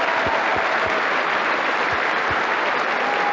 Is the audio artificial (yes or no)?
no